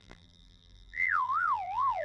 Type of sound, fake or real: fake